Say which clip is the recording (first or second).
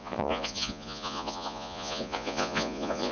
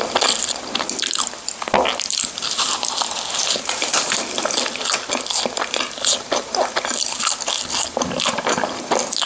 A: second